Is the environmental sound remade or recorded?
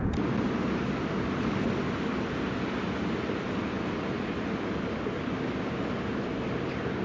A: recorded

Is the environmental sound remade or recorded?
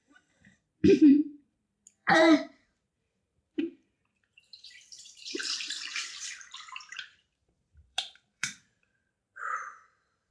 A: remade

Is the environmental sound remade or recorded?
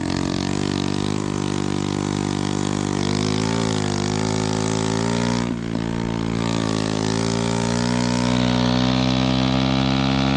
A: recorded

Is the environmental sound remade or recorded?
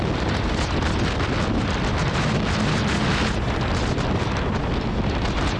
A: recorded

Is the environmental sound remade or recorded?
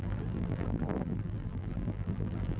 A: remade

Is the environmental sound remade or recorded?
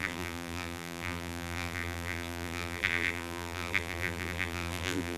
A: remade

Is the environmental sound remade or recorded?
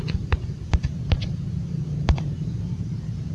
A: remade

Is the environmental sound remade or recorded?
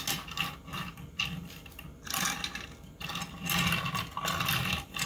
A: recorded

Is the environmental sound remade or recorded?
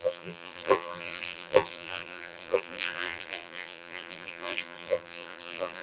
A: remade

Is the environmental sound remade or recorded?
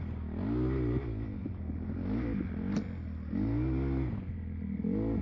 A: recorded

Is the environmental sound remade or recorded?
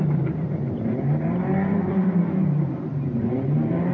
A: remade